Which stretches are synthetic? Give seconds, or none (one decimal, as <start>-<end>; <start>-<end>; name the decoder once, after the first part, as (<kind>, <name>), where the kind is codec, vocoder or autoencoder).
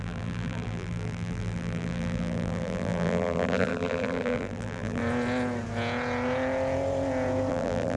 0.0-5.0 (vocoder, BigVGAN v2); 7.5-8.0